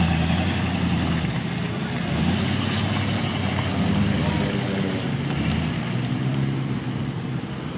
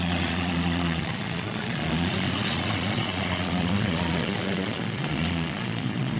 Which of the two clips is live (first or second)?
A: first